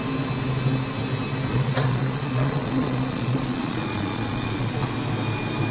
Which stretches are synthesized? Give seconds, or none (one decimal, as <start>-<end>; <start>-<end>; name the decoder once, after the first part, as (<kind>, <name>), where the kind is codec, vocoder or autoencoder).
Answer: 1.5-4.9 (vocoder, Vocos)